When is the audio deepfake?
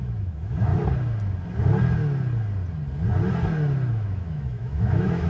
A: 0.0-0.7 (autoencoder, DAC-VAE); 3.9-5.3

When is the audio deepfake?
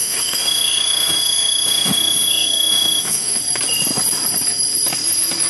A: 0.0-3.4 (autoencoder, DAC-VAE)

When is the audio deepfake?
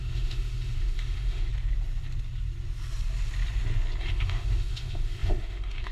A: 0.0-1.5 (autoencoder, DAC-VAE); 4.0-5.9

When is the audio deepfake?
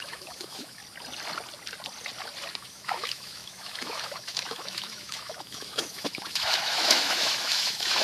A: 0.0-0.8 (autoencoder, DAC-VAE); 2.5-8.0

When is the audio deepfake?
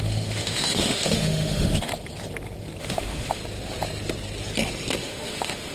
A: 0.0-1.9 (autoencoder, DAC-VAE); 2.8-3.4; 5.0-5.7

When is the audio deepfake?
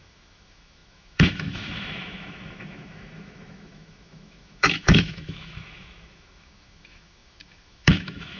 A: 0.0-8.4 (autoencoder, DAC-VAE)